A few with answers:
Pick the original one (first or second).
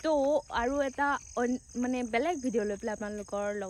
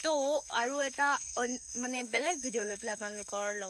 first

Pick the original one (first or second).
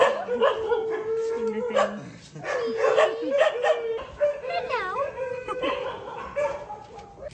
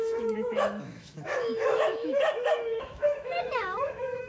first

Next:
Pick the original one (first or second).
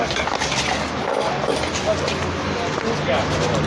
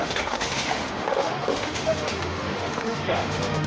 first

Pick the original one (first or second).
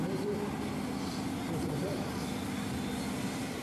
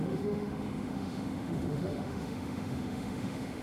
first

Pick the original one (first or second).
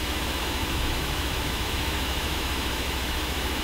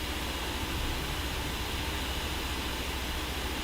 second